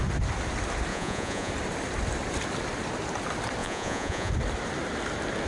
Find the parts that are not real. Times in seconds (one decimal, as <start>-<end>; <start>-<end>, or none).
0.9-1.5; 3.6-4.3